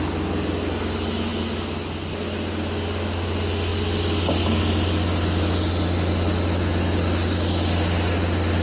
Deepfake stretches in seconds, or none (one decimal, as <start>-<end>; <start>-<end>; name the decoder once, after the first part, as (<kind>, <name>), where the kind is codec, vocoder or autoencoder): none